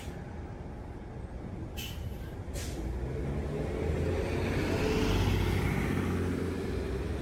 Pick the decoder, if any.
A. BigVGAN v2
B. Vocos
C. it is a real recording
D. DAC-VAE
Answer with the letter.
C